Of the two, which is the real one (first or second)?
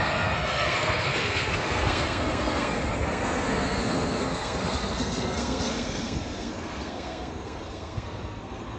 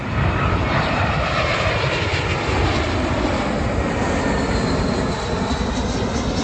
second